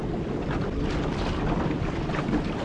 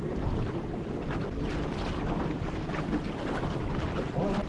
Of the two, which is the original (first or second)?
second